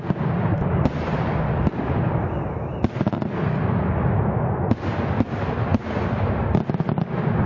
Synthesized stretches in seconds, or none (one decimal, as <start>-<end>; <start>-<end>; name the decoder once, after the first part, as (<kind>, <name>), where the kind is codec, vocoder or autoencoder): none